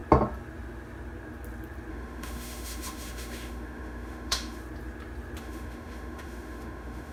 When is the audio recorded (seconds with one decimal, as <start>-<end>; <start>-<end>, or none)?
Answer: 0.0-1.9; 4.6-5.4

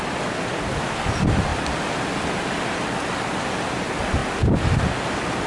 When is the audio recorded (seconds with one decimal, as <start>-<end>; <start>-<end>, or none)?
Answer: 0.0-5.5

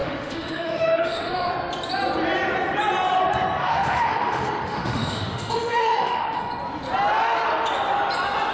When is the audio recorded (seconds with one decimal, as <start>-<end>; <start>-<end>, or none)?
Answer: 1.5-3.6; 6.4-8.5

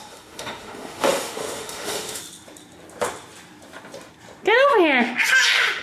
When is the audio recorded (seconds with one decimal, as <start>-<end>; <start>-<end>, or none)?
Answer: 2.2-5.8

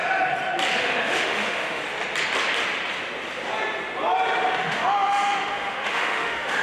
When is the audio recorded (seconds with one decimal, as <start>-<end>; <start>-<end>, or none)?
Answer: 0.0-0.8; 1.8-4.6

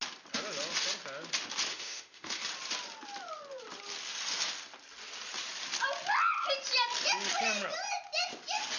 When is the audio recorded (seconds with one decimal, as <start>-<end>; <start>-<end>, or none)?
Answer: 0.0-1.7; 2.4-8.8